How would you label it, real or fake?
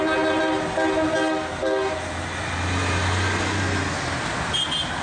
real